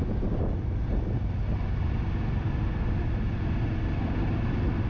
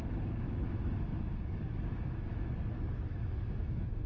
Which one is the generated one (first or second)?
second